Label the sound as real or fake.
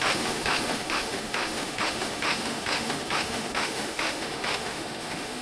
fake